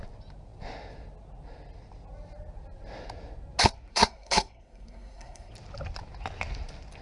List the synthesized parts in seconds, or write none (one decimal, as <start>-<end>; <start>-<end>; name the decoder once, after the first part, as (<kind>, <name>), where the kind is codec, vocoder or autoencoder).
3.9-5.5 (codec, SNAC)